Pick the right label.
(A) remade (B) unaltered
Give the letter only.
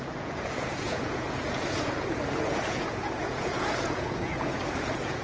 A